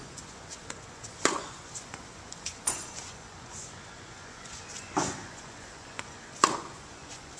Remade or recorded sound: remade